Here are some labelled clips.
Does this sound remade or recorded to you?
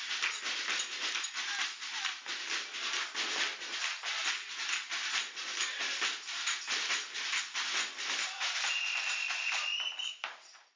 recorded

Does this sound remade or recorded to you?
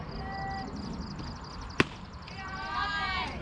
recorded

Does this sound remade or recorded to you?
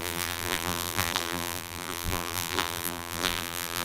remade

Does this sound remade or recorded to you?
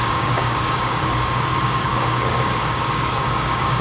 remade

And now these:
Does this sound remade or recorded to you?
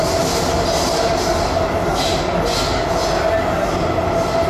recorded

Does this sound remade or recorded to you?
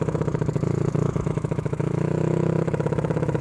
remade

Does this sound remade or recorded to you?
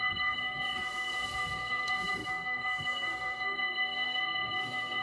remade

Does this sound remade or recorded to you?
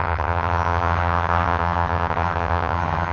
remade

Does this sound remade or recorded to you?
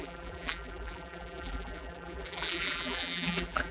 remade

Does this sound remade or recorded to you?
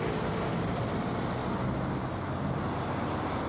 recorded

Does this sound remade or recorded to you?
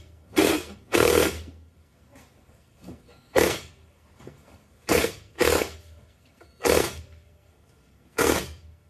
remade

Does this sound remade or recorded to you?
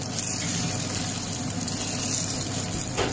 remade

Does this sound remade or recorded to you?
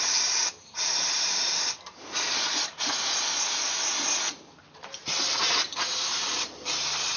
recorded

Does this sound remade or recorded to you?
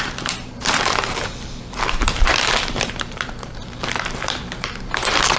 remade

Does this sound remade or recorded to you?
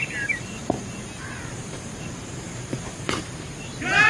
remade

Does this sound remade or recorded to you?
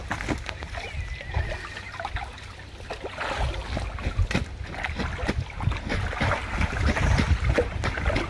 recorded